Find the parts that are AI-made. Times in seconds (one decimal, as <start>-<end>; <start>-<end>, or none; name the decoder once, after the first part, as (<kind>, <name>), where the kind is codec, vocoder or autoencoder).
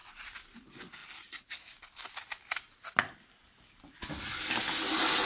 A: none